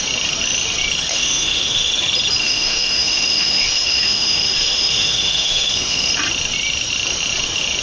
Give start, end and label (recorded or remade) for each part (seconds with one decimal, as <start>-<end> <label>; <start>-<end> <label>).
0.0-1.1 recorded; 1.1-1.9 remade; 1.9-2.4 recorded; 2.4-6.1 remade; 6.1-7.8 recorded